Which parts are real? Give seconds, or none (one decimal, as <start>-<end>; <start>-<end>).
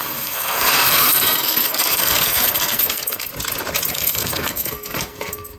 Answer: 3.3-3.9